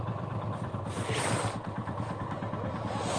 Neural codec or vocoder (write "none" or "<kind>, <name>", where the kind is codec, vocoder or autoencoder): none